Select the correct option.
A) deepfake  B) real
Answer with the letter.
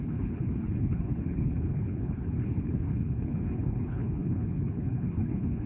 A